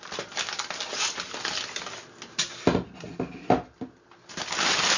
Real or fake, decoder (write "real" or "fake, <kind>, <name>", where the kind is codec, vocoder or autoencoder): real